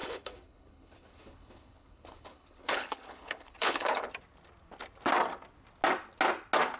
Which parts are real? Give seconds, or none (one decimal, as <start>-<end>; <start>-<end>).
4.1-6.8